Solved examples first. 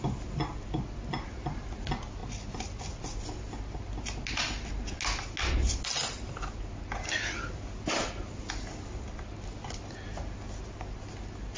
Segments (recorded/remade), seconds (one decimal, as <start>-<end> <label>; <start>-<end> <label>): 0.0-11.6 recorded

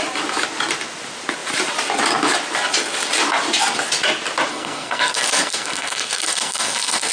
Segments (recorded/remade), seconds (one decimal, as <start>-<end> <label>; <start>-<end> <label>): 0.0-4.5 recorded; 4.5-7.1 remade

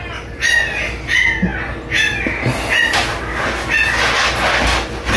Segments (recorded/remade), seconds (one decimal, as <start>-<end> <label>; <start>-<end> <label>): 0.0-5.2 recorded

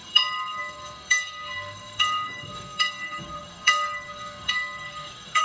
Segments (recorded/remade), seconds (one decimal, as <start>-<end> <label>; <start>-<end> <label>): 0.0-5.4 remade

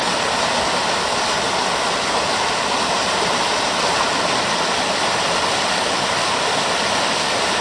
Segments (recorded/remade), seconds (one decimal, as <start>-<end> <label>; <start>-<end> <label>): 0.0-7.6 recorded

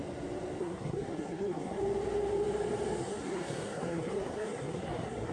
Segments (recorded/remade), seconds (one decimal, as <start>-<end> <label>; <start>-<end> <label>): 0.0-0.6 recorded; 0.6-1.8 remade; 1.8-3.0 recorded; 3.0-5.3 remade